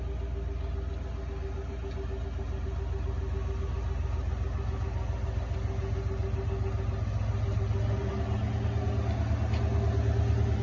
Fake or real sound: real